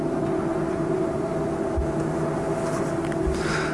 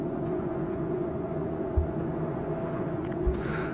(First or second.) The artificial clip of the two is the second